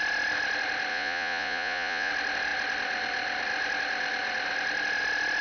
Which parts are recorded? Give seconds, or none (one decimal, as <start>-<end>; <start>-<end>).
0.0-0.9; 2.1-5.4

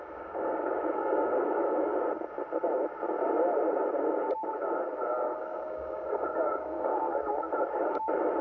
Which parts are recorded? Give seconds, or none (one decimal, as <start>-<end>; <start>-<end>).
1.9-5.1; 7.1-8.4

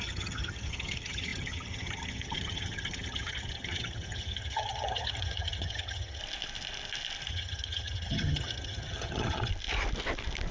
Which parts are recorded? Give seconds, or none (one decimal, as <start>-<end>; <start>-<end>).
6.2-7.3; 9.5-10.5

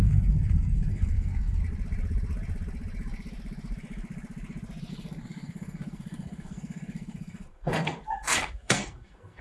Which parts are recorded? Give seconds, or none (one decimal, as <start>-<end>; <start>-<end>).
1.6-4.9

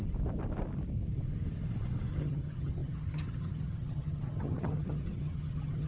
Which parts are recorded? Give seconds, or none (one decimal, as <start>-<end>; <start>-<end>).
0.0-2.1